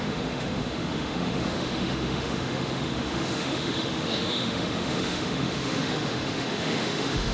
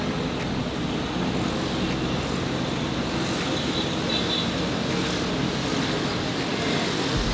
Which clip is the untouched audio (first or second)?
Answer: second